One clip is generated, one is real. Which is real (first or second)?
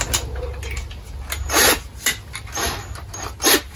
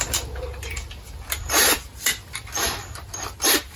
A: first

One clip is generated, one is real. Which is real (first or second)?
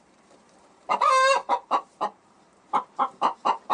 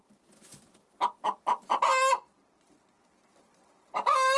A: second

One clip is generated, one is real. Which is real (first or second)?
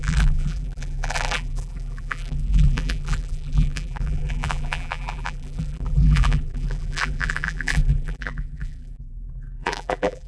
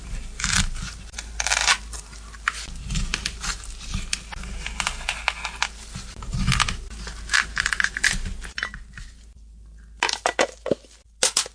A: second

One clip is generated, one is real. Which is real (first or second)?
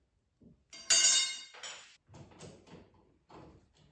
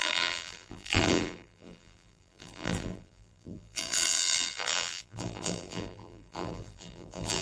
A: first